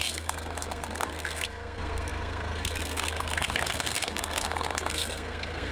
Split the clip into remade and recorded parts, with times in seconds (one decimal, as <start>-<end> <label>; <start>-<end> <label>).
0.0-5.7 remade